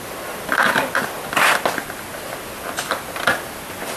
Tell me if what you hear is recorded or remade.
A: recorded